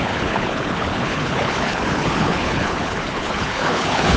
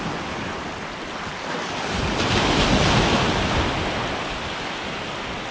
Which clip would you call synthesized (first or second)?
first